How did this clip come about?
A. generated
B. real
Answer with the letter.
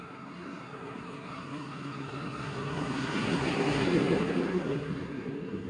A